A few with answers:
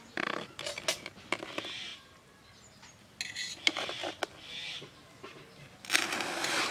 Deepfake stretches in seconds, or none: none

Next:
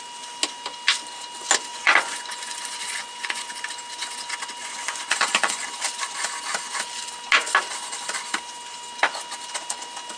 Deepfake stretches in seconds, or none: 1.7-3.5 (vocoder, Vocos); 4.6-5.6

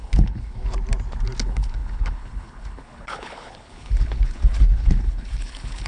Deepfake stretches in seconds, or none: 0.0-0.7 (codec, HILCodec); 1.4-5.9

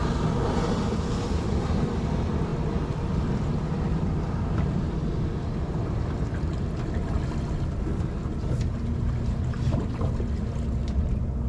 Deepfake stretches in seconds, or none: none

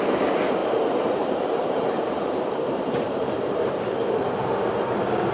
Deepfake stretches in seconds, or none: 0.6-3.8 (vocoder, BigVGAN v2)

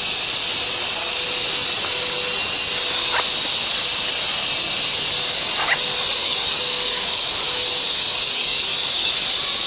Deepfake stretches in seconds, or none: 6.2-9.1 (codec, DAC)

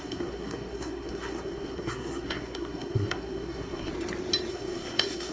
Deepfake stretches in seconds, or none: 0.0-3.9 (codec, SNAC); 4.5-5.3